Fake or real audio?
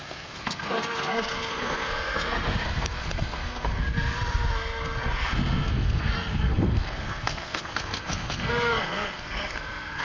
fake